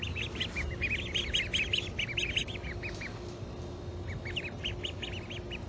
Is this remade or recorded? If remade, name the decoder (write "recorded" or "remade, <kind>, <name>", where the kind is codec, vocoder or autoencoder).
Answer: recorded